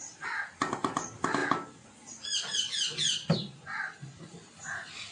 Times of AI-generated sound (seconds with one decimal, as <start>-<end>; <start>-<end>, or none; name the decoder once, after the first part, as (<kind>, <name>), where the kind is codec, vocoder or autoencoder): none